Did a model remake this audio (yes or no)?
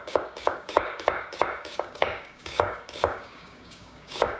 yes